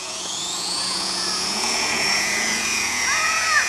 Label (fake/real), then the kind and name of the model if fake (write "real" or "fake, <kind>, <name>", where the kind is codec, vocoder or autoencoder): fake, vocoder, Vocos